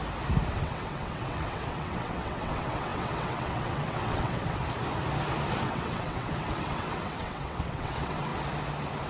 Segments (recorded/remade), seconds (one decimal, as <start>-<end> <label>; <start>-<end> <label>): 0.0-0.5 recorded; 0.5-4.6 remade; 4.6-5.6 recorded; 5.6-8.3 remade; 8.3-9.1 recorded